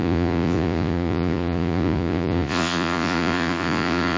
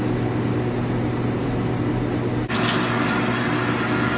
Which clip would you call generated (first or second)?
first